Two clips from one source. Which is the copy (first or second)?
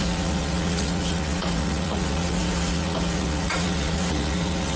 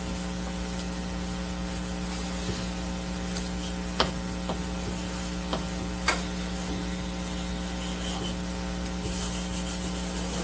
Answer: first